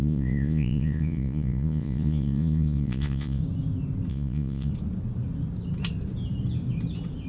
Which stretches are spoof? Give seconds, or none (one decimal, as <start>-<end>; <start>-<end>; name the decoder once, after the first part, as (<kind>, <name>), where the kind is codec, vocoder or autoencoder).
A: 0.0-3.4 (vocoder, Vocos); 4.1-4.7